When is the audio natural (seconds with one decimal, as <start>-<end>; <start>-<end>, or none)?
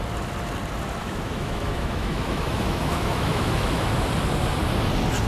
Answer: 0.0-1.0; 3.8-5.3